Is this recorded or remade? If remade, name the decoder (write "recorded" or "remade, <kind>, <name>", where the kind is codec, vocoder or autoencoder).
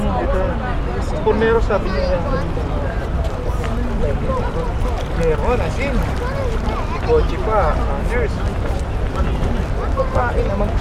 recorded